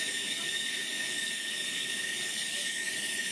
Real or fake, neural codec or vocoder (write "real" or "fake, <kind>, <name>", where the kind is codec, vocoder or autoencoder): fake, codec, DAC